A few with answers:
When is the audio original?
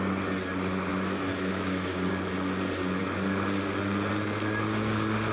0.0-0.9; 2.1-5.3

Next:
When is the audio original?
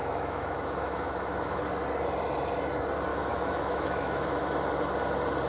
1.6-3.1; 4.6-5.5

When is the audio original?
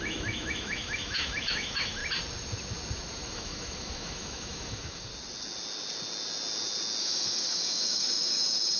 2.0-3.3; 5.1-7.0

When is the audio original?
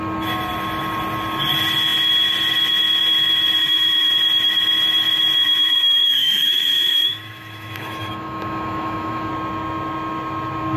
0.0-3.6; 4.1-5.4; 9.3-10.8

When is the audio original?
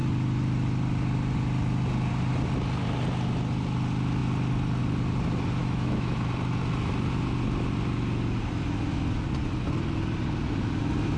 0.0-5.6; 6.2-11.2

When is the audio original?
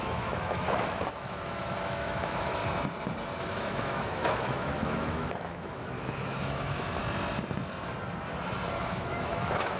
2.6-3.4; 7.0-8.7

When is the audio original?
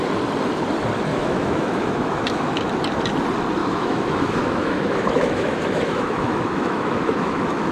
0.0-1.1; 2.7-3.6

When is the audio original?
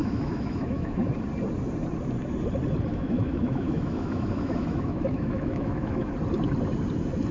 1.1-2.9; 6.1-7.3